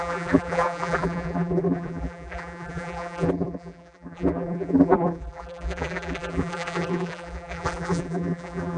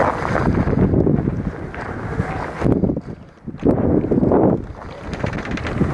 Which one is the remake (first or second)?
first